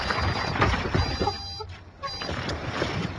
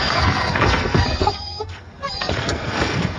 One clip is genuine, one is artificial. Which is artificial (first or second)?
second